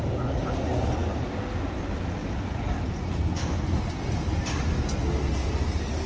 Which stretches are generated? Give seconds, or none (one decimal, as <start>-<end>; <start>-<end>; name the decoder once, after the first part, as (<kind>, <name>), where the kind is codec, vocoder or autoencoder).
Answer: none

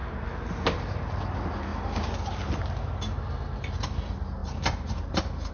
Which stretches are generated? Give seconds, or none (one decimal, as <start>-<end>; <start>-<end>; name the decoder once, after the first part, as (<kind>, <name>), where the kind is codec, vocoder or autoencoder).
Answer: 0.0-1.0 (vocoder, BigVGAN v2); 4.4-5.5

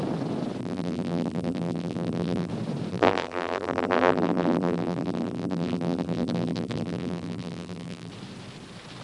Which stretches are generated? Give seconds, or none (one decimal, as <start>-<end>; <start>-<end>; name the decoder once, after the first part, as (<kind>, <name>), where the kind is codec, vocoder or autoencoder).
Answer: 0.6-2.5 (vocoder, BigVGAN v2); 2.9-8.1

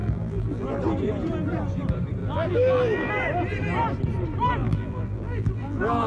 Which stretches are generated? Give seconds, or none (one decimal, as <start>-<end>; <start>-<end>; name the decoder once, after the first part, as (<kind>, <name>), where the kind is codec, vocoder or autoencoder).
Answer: 0.0-0.8 (vocoder, BigVGAN v2); 2.2-3.1; 4.6-6.1